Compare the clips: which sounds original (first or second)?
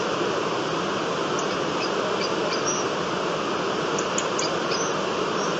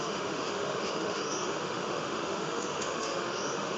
first